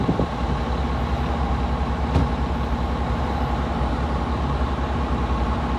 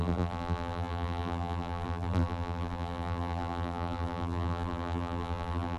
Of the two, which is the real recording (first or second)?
first